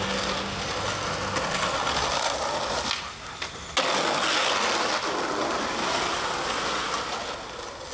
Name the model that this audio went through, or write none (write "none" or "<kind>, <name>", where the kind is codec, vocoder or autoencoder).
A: none